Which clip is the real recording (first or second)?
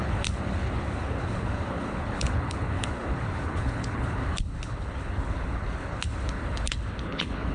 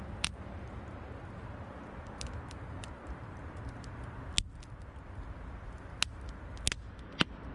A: second